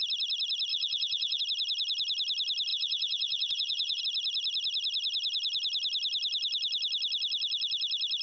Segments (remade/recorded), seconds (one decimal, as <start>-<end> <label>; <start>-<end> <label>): 0.0-0.7 recorded; 0.7-1.4 remade; 1.4-2.7 recorded; 2.7-4.0 remade; 4.0-8.2 recorded